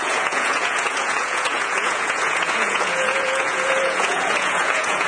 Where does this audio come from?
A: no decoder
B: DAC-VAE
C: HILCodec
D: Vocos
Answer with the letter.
D